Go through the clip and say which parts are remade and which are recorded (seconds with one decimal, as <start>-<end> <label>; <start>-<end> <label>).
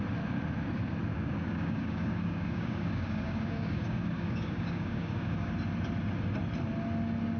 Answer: 0.0-1.1 recorded; 1.1-5.5 remade; 5.5-7.4 recorded